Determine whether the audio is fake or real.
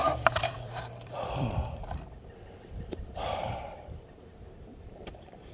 fake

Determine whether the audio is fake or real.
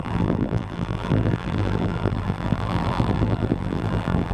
fake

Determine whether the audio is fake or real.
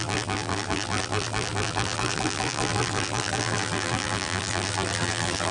fake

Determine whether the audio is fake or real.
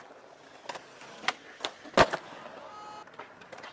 real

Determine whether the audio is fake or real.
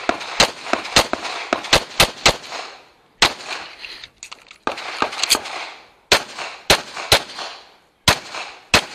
real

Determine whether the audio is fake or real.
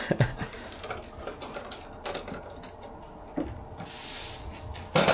real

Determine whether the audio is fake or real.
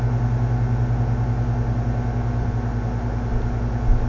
real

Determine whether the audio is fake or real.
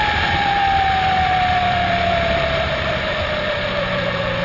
fake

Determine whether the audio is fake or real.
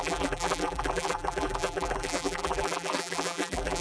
fake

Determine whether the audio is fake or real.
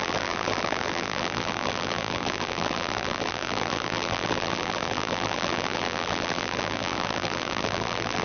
fake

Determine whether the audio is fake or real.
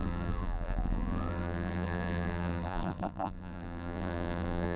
fake